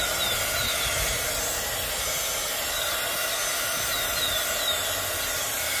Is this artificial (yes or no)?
no